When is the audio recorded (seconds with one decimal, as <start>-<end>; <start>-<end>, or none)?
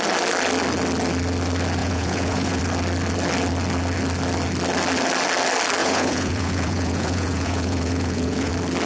0.0-1.8; 2.6-5.8; 8.5-8.9